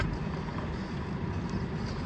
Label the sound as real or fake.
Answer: real